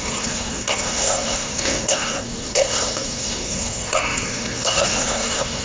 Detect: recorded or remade remade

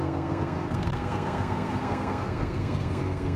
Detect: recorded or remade remade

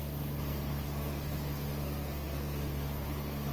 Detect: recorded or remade remade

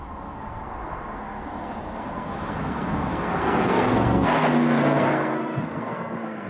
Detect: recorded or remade remade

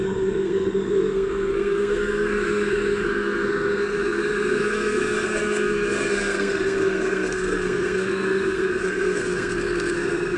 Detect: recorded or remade remade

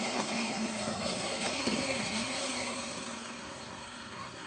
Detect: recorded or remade remade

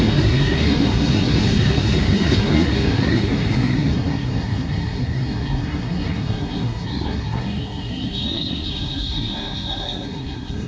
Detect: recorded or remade remade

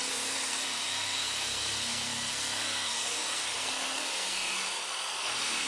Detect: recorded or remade remade